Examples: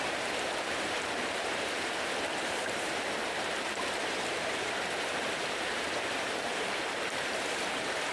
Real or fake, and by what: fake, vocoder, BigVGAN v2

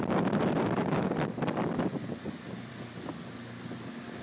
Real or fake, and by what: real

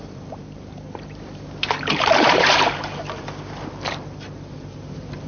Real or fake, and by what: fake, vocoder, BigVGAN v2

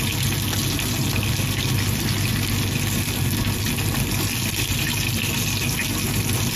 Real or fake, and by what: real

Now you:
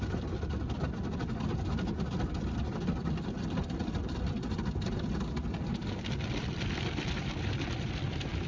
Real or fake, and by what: fake, vocoder, BigVGAN v2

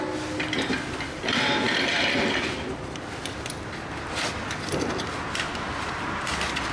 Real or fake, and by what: real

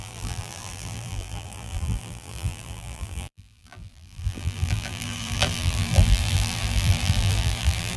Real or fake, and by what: fake, vocoder, BigVGAN v2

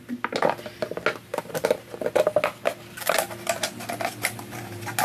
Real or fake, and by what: real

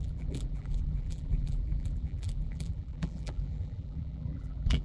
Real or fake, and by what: fake, vocoder, BigVGAN v2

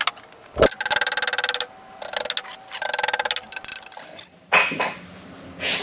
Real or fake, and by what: real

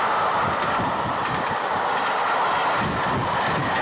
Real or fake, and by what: real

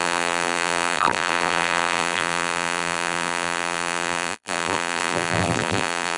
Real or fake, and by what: fake, vocoder, BigVGAN v2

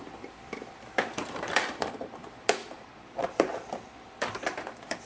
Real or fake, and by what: fake, vocoder, BigVGAN v2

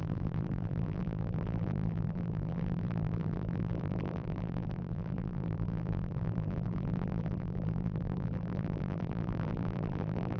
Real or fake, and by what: fake, vocoder, BigVGAN v2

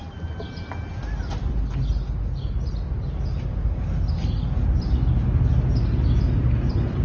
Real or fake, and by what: real